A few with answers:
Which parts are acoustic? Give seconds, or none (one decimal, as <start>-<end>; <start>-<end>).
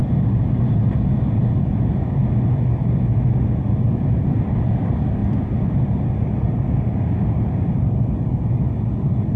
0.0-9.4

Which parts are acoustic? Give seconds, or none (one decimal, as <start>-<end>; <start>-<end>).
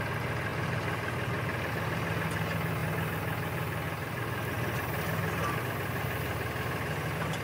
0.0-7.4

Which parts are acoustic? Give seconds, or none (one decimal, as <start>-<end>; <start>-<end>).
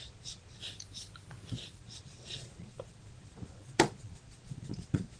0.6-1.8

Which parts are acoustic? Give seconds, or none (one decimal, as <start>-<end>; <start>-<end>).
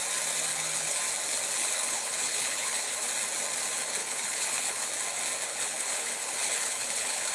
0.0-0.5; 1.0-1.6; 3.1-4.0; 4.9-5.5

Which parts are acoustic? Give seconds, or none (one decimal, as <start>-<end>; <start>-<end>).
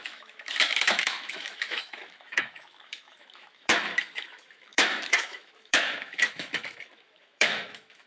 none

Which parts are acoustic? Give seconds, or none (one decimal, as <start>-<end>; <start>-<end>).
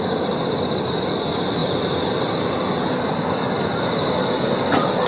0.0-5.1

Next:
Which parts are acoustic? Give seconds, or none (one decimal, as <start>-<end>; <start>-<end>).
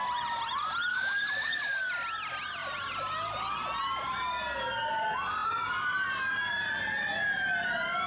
0.0-0.9; 1.9-8.1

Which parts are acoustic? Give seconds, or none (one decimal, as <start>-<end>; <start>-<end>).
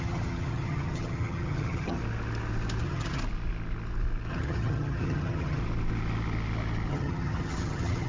2.0-2.8; 3.2-4.3; 5.6-6.9